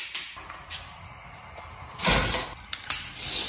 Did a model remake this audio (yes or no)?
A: no